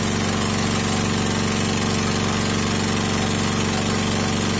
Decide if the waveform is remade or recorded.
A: recorded